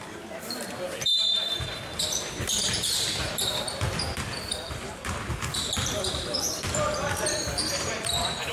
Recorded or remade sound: remade